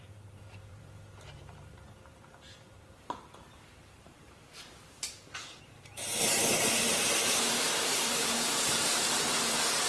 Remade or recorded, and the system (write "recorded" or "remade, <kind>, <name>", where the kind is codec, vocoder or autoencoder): remade, vocoder, BigVGAN v2